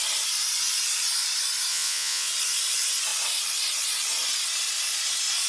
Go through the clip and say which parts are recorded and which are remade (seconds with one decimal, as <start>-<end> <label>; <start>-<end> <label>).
0.0-1.7 recorded; 1.7-2.3 remade; 2.3-5.5 recorded